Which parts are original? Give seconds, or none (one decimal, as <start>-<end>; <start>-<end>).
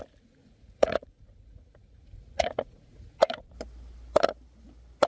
0.0-0.4; 3.5-5.1